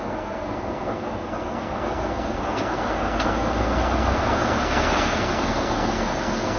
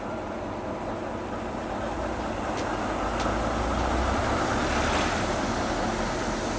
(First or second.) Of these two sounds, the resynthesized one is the first